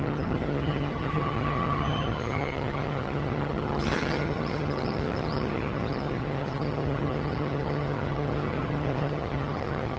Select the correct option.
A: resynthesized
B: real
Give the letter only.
A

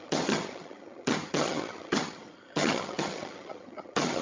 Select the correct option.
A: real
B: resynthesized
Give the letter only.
B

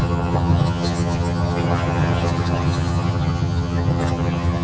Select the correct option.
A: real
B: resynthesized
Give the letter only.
B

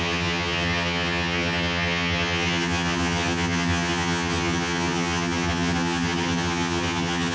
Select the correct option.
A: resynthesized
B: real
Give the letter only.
A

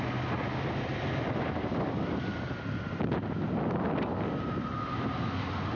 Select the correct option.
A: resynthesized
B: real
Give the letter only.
B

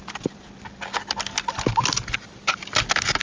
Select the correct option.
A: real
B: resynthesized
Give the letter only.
A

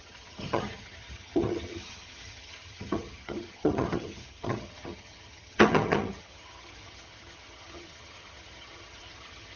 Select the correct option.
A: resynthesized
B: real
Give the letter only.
A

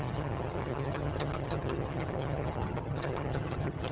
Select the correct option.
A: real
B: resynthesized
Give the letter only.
B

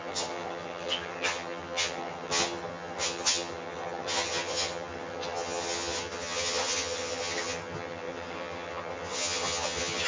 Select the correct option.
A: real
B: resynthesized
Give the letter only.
B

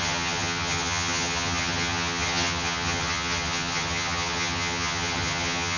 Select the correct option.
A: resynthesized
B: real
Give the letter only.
A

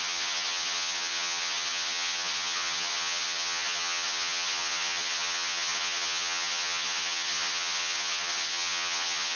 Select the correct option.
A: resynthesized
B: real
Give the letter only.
A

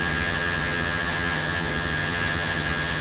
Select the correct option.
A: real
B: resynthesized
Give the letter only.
B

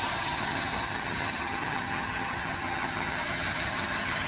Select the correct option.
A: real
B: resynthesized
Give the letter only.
B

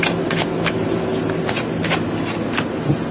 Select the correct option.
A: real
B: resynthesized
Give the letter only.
A